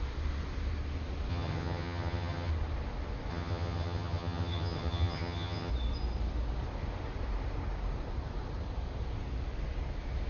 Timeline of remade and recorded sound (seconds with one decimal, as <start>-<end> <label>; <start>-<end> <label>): 0.0-1.3 recorded; 1.3-2.5 remade; 2.5-3.3 recorded; 3.3-5.7 remade; 5.7-10.3 recorded